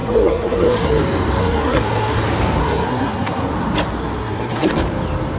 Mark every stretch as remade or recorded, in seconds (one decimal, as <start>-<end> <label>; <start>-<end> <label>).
0.0-0.9 remade; 0.9-1.4 recorded; 1.4-2.2 remade; 2.2-2.6 recorded; 2.6-3.5 remade; 3.5-4.0 recorded; 4.0-4.7 remade; 4.7-5.4 recorded